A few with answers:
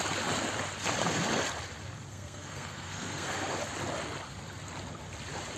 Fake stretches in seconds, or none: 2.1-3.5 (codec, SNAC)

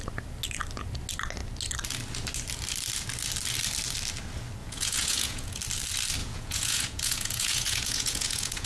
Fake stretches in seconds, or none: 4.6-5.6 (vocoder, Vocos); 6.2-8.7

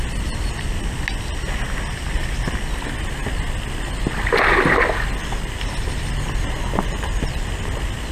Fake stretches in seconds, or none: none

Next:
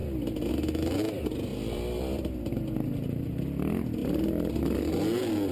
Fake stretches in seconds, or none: none